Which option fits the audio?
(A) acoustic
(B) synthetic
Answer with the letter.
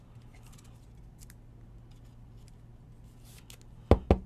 A